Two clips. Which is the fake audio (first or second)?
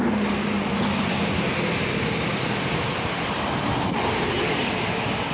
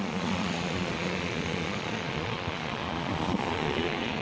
second